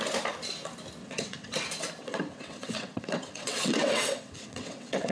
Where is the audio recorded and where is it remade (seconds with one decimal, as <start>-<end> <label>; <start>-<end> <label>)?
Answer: 0.0-1.0 recorded; 1.0-1.6 remade; 1.6-2.0 recorded; 2.0-5.1 remade